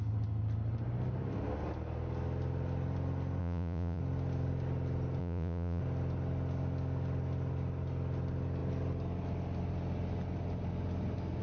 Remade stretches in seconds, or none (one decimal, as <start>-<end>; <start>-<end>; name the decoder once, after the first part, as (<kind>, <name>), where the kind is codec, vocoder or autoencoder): 3.4-4.0 (vocoder, Vocos); 5.2-5.8